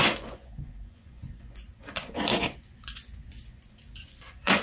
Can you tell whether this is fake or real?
fake